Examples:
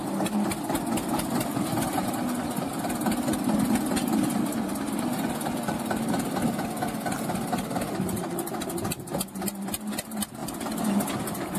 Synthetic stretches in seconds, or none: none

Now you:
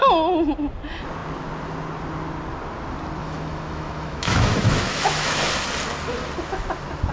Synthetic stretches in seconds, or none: 3.2-5.4 (autoencoder, DAC-VAE)

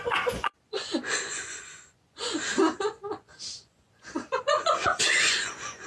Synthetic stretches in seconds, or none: 0.0-5.9 (vocoder, Vocos)